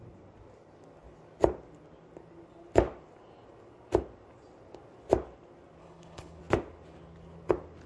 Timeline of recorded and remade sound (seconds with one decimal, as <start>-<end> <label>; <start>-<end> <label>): 0.0-5.8 recorded; 5.8-6.4 remade; 6.4-7.9 recorded

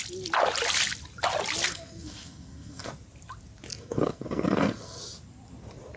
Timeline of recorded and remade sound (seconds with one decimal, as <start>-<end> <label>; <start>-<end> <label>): 0.0-1.7 recorded; 1.7-2.9 remade; 2.9-3.7 recorded; 3.7-5.0 remade; 5.0-6.0 recorded

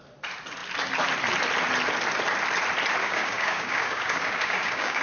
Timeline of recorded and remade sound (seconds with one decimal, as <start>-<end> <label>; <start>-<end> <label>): 0.0-3.0 recorded; 3.0-5.0 remade

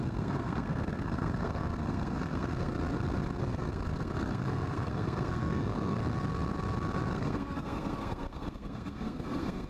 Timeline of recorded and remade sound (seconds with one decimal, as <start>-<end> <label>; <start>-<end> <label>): 0.0-2.7 remade; 2.7-3.4 recorded; 3.4-6.0 remade; 6.0-7.1 recorded; 7.1-9.7 remade

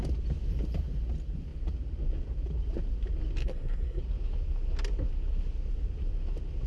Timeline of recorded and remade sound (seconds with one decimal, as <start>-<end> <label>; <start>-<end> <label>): 0.0-3.4 recorded; 3.4-4.0 remade; 4.0-6.7 recorded

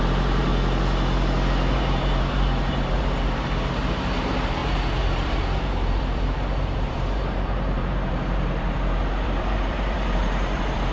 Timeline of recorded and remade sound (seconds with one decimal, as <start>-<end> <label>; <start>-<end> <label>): 0.0-0.5 remade; 0.5-1.7 recorded; 1.7-10.9 remade